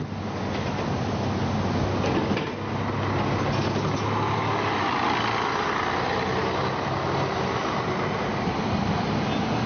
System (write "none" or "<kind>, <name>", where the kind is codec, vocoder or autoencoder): none